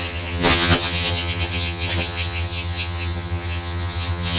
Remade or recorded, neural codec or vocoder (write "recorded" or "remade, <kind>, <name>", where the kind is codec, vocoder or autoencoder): remade, vocoder, HiFi-GAN